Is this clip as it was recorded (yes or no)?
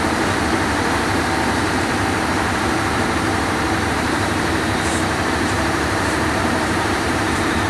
no